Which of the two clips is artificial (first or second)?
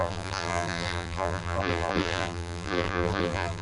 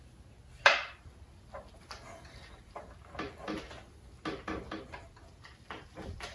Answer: first